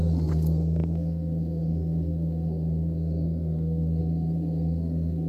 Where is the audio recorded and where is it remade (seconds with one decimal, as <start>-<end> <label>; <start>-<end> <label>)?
0.0-5.3 remade